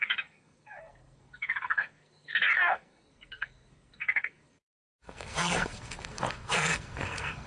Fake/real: fake